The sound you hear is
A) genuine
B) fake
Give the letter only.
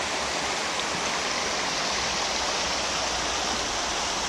A